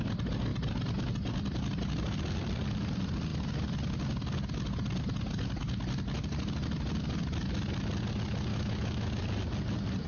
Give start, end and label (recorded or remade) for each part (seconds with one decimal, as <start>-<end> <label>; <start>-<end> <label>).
0.0-8.5 recorded; 8.5-9.2 remade; 9.2-10.1 recorded